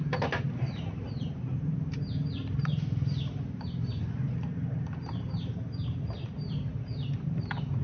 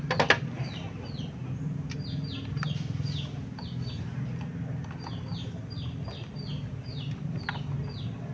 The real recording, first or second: second